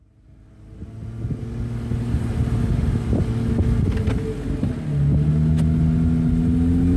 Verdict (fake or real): real